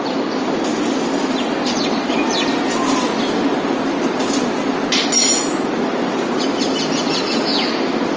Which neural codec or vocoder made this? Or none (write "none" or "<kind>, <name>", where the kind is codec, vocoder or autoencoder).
none